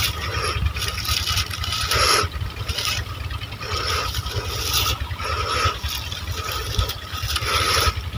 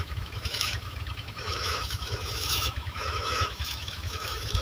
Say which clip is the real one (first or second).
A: first